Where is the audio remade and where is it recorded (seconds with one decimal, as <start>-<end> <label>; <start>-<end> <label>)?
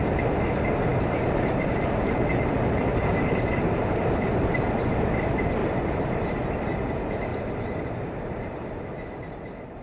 0.0-0.9 recorded; 0.9-4.3 remade; 4.3-5.6 recorded; 5.6-6.3 remade; 6.3-7.3 recorded; 7.3-8.7 remade; 8.7-9.8 recorded